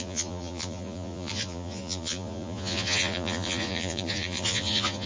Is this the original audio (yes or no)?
no